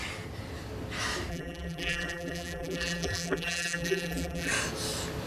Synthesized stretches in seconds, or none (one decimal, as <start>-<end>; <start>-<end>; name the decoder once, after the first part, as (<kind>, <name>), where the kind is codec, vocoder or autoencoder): 1.3-4.5 (vocoder, BigVGAN v2)